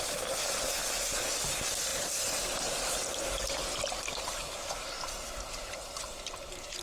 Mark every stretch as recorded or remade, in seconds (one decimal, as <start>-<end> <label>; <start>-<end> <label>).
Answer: 0.0-6.8 recorded